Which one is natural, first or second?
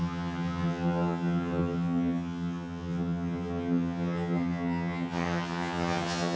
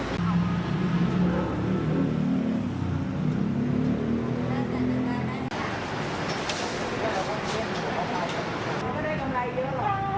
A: second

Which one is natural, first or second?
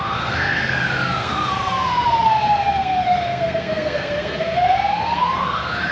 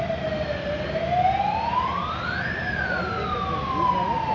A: second